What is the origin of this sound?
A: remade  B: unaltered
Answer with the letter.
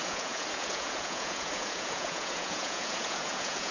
A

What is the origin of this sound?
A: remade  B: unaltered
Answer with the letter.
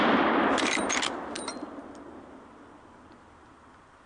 B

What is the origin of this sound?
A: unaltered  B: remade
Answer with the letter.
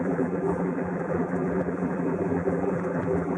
B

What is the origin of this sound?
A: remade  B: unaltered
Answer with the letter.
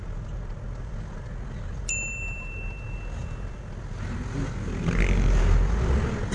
B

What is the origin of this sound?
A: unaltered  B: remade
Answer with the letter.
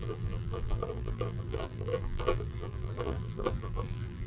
B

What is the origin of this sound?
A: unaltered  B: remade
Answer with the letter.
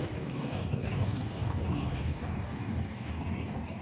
B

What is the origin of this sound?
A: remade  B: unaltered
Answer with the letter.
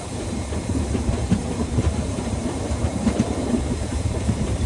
A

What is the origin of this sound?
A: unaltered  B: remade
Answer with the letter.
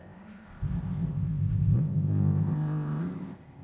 B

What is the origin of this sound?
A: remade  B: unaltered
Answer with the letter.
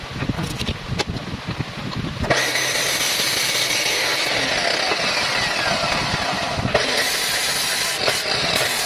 B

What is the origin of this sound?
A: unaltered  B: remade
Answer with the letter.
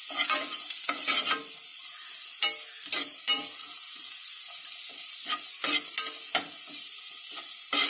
A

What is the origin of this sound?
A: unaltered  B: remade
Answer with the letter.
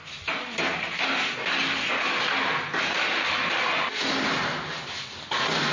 A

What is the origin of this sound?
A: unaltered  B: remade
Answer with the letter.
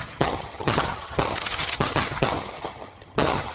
B